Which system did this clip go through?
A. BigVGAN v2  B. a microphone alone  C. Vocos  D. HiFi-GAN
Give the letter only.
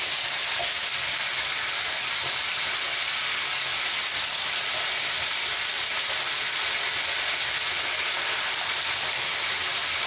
B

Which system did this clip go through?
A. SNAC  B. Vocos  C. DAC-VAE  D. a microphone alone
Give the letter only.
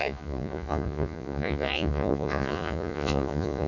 B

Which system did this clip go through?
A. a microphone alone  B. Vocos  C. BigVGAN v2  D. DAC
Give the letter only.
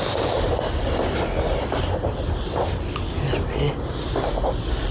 A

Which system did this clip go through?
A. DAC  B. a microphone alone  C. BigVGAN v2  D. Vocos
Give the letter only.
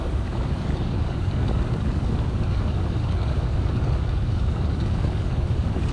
A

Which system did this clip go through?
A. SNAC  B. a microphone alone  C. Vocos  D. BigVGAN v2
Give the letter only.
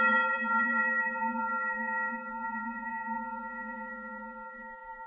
D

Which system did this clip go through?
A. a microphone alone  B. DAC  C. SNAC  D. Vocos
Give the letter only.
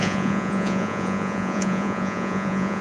D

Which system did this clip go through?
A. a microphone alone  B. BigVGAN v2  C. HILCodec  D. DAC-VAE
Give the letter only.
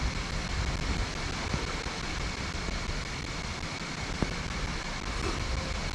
A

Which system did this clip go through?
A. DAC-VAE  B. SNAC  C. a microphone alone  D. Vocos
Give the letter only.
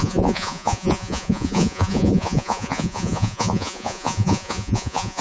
D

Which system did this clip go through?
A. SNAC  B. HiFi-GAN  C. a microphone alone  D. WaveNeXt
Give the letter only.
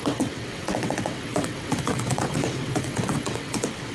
D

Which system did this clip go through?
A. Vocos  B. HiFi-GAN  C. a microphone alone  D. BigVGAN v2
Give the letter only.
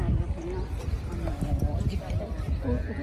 C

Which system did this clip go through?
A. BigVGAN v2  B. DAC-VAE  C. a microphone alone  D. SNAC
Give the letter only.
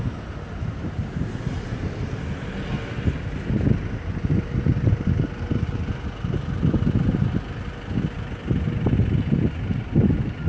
C